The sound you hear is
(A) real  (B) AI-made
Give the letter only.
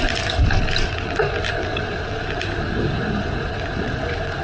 A